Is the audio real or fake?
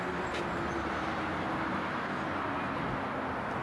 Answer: real